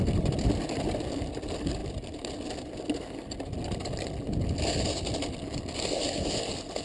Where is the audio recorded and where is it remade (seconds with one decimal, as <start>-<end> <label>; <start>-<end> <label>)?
0.0-6.8 recorded